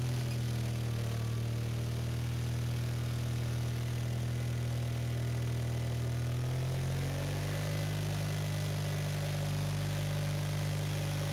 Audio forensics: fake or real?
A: real